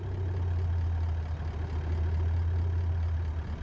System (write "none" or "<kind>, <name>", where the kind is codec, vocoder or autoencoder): none